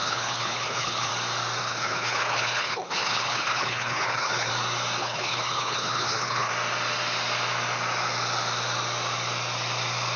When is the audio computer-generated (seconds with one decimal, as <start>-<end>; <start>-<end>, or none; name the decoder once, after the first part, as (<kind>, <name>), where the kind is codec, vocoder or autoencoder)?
0.0-1.1 (codec, HILCodec); 1.6-4.5; 5.0-6.5